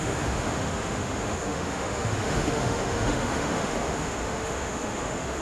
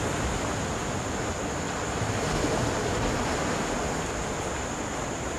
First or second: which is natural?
second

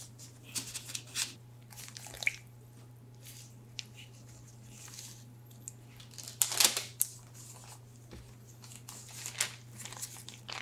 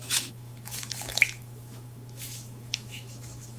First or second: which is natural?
first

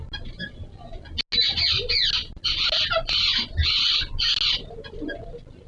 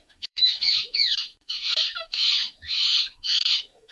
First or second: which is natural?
first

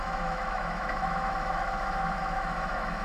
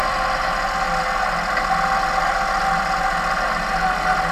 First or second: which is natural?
second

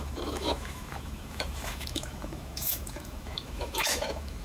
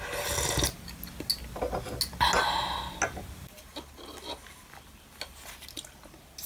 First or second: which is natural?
second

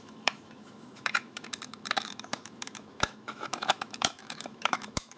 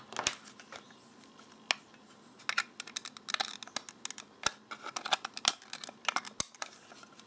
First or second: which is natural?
second